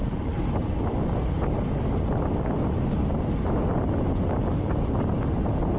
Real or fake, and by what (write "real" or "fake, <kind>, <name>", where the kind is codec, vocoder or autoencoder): real